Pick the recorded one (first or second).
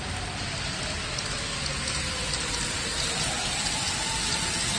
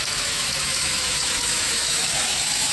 first